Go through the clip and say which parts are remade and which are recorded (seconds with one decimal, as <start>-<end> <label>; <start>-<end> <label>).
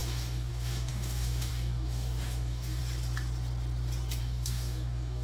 0.0-2.8 remade; 2.8-4.2 recorded; 4.2-5.2 remade